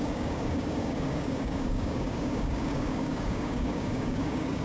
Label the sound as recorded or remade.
remade